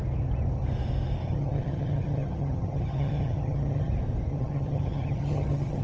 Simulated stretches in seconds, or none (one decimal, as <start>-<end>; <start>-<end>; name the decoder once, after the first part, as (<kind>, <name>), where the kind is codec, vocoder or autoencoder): 1.2-3.9 (vocoder, HiFi-GAN); 4.3-5.8